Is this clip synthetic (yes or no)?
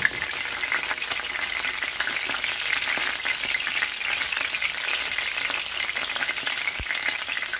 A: no